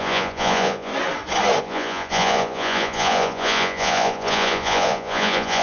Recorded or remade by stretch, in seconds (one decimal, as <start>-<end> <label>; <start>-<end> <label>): 0.0-0.9 remade; 0.9-1.6 recorded; 1.6-5.6 remade